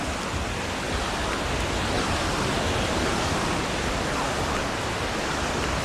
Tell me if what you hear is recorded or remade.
recorded